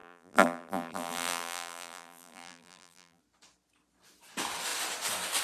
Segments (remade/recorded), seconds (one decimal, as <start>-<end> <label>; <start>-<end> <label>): 0.0-3.2 remade; 3.2-5.4 recorded